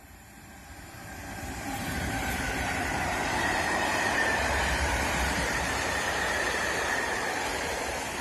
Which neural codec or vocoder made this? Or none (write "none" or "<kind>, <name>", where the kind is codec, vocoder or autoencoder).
vocoder, BigVGAN v2